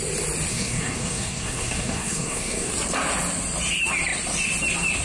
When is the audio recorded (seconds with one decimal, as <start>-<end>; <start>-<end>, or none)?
0.0-0.5; 2.7-5.0